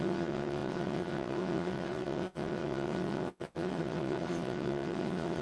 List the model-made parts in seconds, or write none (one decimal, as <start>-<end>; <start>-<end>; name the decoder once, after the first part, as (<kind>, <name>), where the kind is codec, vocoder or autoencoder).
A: 0.0-5.4 (vocoder, WaveNeXt)